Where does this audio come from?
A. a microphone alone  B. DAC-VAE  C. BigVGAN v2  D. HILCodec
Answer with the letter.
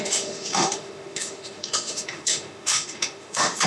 B